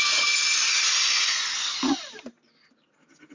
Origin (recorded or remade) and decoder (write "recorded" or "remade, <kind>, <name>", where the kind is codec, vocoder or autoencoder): recorded